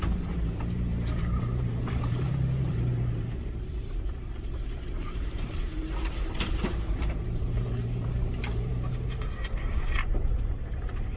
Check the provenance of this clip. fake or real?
fake